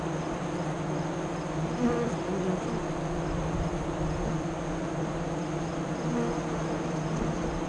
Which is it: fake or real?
real